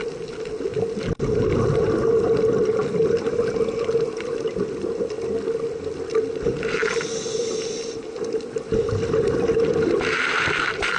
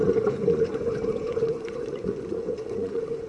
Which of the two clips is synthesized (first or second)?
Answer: second